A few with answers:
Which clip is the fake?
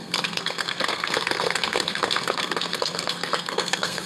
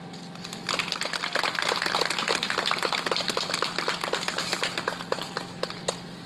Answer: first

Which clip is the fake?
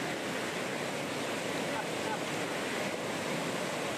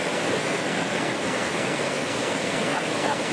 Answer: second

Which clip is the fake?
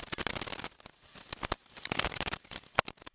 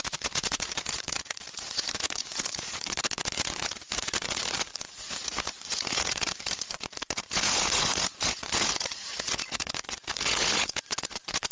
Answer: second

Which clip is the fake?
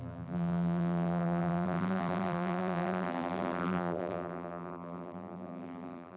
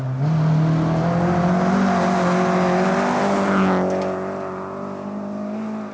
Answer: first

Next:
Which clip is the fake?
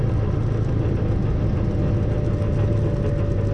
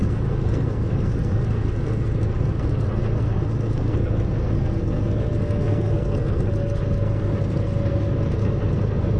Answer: second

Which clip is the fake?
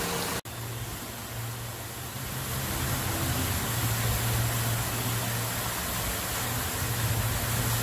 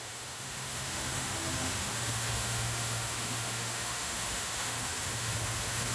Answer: second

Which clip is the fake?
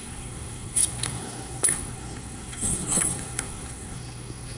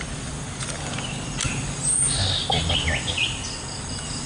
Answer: first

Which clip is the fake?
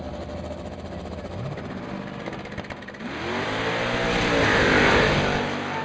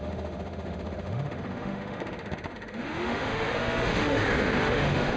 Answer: second